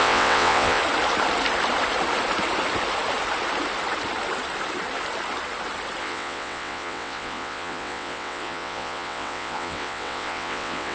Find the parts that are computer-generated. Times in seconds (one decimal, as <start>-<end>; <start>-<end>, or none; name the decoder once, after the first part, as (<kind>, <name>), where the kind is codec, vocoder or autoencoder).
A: 0.0-0.8 (vocoder, WaveNeXt); 6.0-10.9